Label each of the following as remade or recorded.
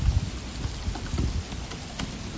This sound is recorded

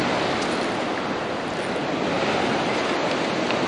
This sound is recorded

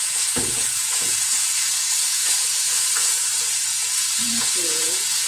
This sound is remade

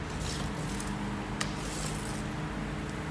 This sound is recorded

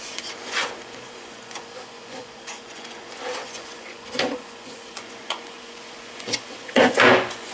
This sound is remade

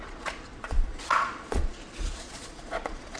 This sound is remade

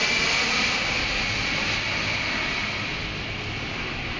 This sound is recorded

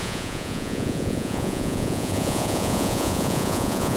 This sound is remade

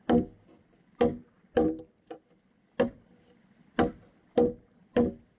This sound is recorded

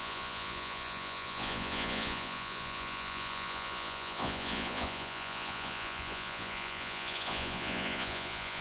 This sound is remade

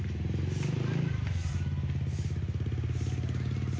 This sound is recorded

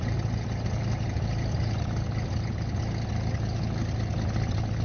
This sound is recorded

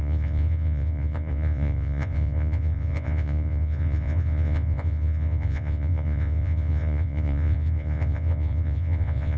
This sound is remade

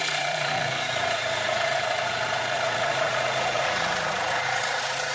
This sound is remade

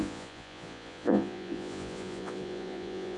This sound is remade